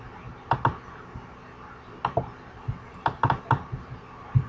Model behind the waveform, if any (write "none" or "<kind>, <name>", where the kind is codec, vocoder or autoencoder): none